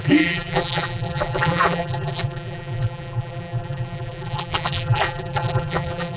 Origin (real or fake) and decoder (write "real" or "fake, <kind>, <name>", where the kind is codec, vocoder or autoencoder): fake, vocoder, BigVGAN v2